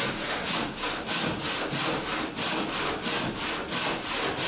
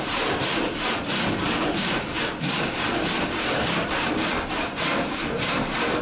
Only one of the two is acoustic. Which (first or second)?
first